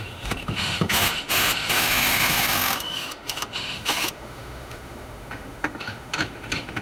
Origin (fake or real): fake